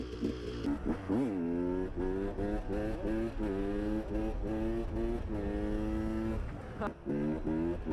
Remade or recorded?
recorded